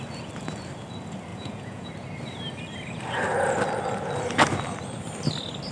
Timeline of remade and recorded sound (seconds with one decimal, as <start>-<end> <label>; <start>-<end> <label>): 0.0-1.3 recorded; 1.3-1.9 remade; 1.9-5.7 recorded

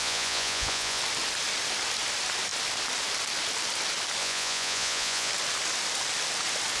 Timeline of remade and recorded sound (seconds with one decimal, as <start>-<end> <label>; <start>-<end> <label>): 0.0-1.0 remade; 1.0-4.2 recorded; 4.2-5.3 remade; 5.3-6.8 recorded

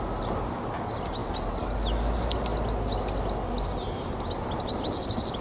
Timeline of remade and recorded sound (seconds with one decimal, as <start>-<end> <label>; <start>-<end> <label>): 0.0-5.4 recorded

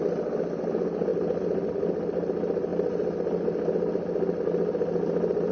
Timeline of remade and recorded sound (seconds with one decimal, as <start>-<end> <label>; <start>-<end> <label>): 0.0-5.5 recorded